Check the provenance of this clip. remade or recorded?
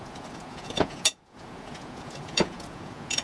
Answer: remade